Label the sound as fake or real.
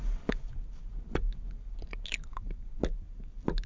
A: real